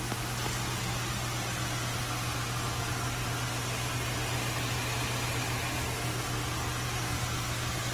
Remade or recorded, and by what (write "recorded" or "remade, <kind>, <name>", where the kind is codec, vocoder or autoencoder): recorded